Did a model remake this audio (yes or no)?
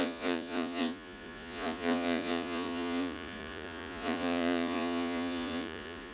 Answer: yes